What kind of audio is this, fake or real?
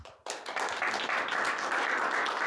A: real